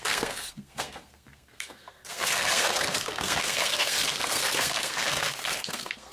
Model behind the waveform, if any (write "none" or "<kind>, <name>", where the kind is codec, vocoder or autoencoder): codec, SNAC